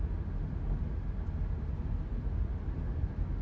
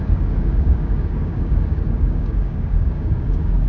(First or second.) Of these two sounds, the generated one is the second